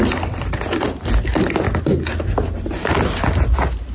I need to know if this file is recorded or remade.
recorded